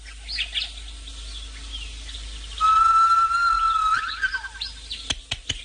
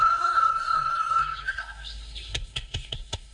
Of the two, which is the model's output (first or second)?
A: second